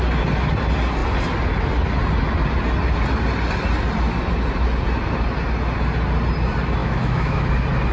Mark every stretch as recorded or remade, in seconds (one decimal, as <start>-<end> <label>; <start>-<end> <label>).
0.0-6.8 recorded; 6.8-7.5 remade; 7.5-7.9 recorded